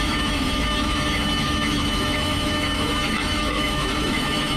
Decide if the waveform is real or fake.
fake